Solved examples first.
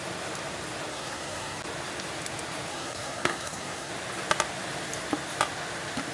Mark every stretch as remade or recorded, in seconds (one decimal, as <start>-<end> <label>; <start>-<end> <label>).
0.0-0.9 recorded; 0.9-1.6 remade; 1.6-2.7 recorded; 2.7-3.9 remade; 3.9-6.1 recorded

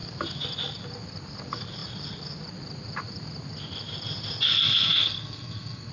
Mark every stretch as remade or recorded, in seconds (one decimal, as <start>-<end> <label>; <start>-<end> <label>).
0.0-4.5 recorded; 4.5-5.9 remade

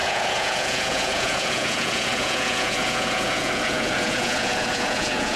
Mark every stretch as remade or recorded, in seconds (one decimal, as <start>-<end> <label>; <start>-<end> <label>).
0.0-5.4 remade

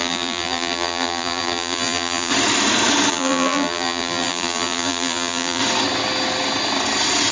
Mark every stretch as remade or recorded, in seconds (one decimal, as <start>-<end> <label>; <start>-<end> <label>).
0.0-2.3 remade; 2.3-3.1 recorded; 3.1-5.6 remade; 5.6-7.3 recorded